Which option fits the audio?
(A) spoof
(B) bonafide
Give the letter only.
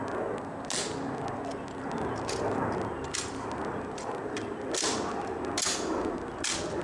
B